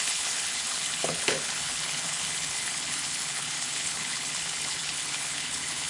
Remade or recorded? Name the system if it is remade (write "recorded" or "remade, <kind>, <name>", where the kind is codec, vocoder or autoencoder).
remade, codec, HILCodec